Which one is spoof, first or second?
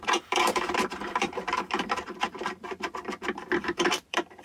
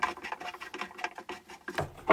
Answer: first